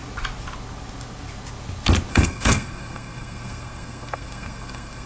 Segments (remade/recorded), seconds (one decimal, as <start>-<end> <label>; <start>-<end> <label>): 0.0-2.1 recorded; 2.1-5.1 remade